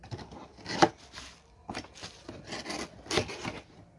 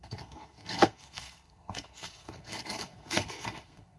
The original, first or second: first